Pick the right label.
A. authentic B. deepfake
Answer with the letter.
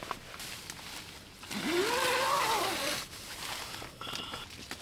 A